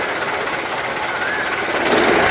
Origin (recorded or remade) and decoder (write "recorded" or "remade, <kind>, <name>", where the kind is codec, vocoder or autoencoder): recorded